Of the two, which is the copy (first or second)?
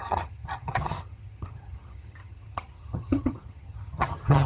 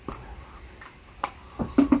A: first